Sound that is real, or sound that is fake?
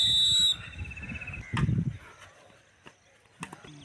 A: real